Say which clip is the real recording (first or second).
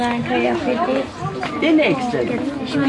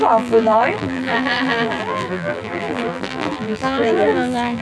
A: first